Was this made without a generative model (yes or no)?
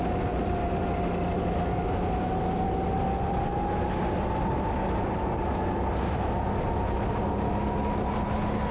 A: yes